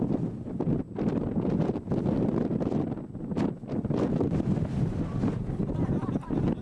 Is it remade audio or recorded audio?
recorded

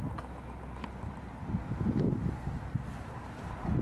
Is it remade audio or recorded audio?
recorded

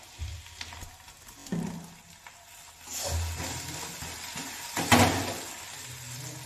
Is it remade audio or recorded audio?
recorded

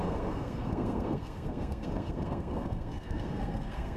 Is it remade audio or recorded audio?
remade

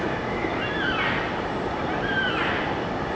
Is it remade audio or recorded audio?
recorded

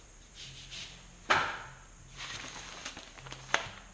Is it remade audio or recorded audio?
recorded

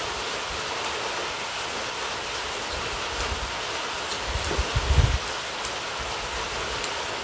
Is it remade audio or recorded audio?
recorded